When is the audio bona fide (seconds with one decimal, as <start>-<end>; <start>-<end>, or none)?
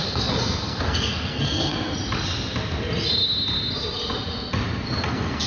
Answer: 1.9-5.1